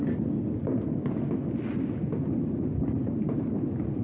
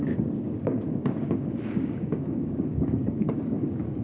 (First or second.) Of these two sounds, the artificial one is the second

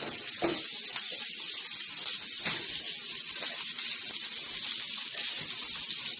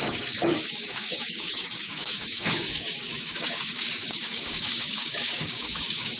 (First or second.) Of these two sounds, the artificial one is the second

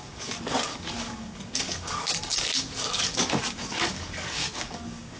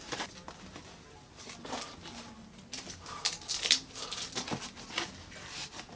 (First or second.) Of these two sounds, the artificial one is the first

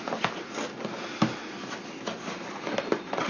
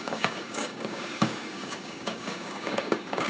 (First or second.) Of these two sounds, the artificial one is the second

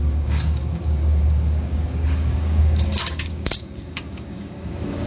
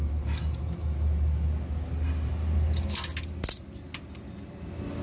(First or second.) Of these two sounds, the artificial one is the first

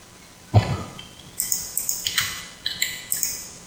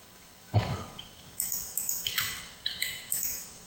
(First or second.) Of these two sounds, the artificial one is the second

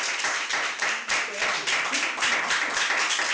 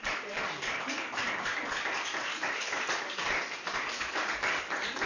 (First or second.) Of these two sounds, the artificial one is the second